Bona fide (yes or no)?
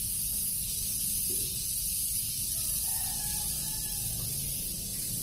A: yes